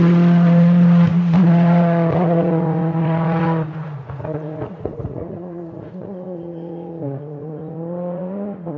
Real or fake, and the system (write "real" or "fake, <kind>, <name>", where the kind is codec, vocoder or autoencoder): fake, vocoder, Vocos